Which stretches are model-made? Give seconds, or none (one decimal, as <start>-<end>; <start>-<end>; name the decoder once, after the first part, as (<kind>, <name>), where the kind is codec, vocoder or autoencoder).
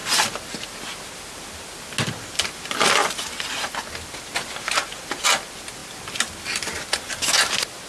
none